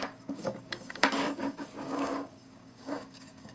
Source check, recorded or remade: remade